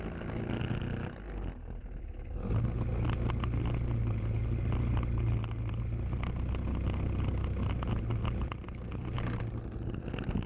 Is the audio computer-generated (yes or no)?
no